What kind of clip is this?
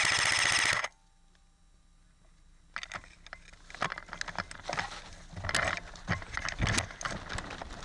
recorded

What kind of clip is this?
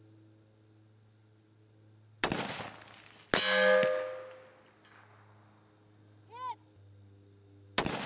recorded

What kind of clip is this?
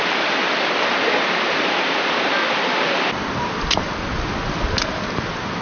remade